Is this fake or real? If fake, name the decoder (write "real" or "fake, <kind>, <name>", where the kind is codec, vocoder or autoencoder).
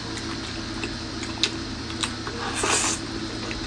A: real